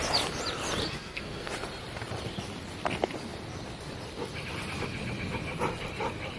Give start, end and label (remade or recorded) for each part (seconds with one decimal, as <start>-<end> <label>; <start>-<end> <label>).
0.0-0.8 recorded; 0.8-1.5 remade; 1.5-6.4 recorded